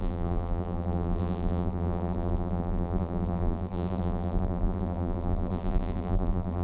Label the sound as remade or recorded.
remade